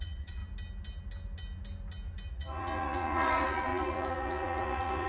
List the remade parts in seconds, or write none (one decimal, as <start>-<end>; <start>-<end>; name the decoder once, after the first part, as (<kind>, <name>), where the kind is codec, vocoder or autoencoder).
0.0-0.4 (vocoder, Vocos); 2.3-5.1